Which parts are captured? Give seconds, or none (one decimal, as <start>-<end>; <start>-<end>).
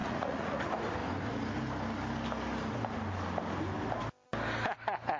0.6-5.2